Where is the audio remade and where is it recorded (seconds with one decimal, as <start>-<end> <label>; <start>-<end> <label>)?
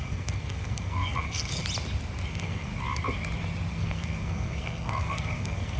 0.0-1.6 remade; 1.6-2.3 recorded; 2.3-2.7 remade; 2.7-3.7 recorded; 3.7-5.8 remade